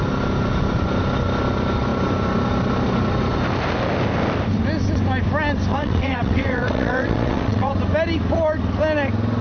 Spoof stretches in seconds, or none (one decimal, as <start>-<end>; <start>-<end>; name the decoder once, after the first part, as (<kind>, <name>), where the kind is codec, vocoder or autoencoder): 5.7-7.7 (vocoder, WaveNeXt)